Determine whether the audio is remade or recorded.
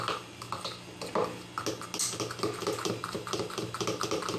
recorded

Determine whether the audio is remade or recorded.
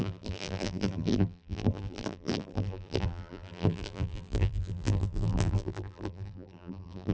remade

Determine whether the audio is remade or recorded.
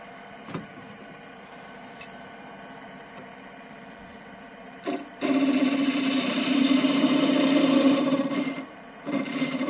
remade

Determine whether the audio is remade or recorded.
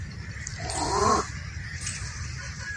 recorded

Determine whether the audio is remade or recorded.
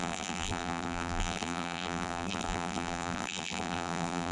remade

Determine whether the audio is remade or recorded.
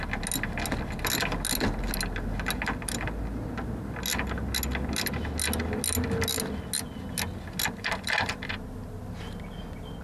recorded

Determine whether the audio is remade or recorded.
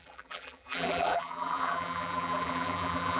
remade